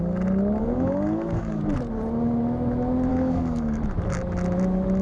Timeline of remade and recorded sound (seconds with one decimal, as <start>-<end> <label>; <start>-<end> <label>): 0.0-0.6 recorded; 0.6-1.6 remade; 1.6-3.1 recorded; 3.1-3.8 remade; 3.8-5.0 recorded